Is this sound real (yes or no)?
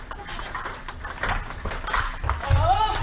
yes